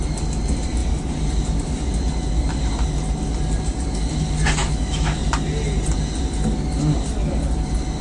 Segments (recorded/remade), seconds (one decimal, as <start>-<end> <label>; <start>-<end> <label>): 0.0-4.6 recorded; 4.6-5.2 remade; 5.2-8.0 recorded